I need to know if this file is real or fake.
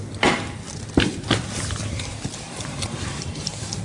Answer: real